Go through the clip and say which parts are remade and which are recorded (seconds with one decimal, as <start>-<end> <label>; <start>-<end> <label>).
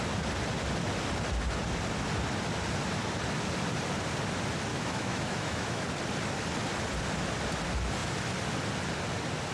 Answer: 0.0-4.7 recorded; 4.7-5.8 remade; 5.8-9.5 recorded